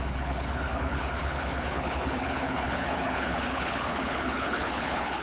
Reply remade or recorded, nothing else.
remade